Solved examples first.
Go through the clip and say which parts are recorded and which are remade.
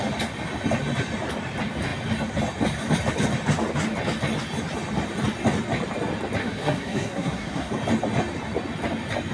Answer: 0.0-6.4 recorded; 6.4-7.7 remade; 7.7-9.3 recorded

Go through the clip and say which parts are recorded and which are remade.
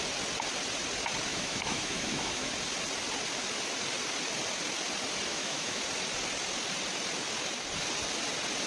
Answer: 0.0-1.3 recorded; 1.3-2.5 remade; 2.5-5.3 recorded; 5.3-5.8 remade; 5.8-8.7 recorded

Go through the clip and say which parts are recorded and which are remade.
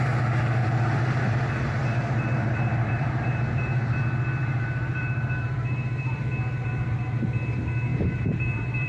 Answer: 0.0-0.6 recorded; 0.6-4.0 remade; 4.0-4.4 recorded; 4.4-6.1 remade; 6.1-7.9 recorded; 7.9-8.9 remade